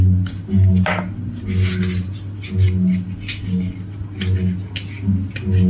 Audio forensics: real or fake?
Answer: real